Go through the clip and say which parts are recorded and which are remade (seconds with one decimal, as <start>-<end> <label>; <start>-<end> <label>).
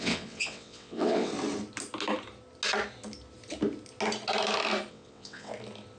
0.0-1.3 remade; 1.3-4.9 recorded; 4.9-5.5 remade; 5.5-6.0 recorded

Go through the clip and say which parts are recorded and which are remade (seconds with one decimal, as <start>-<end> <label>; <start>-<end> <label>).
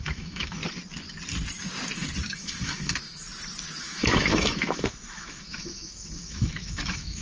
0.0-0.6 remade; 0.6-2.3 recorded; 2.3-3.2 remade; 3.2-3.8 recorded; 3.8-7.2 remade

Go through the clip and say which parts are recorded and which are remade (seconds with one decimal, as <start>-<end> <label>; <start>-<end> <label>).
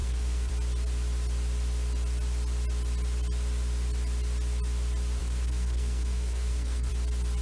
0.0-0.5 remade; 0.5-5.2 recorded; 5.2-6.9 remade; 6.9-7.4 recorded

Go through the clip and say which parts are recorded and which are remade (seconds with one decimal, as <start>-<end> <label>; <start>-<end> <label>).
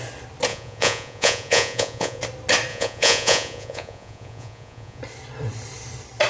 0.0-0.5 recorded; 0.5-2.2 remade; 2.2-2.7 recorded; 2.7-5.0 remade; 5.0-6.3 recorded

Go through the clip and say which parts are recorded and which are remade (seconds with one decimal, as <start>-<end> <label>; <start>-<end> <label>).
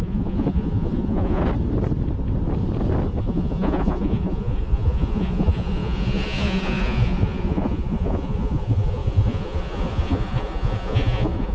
0.0-1.4 remade; 1.4-3.2 recorded; 3.2-11.5 remade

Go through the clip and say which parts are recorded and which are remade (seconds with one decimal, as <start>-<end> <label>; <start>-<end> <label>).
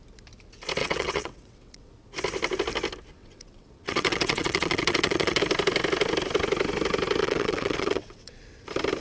0.0-0.8 recorded; 0.8-1.9 remade; 1.9-3.2 recorded; 3.2-5.4 remade; 5.4-7.2 recorded; 7.2-8.4 remade; 8.4-9.0 recorded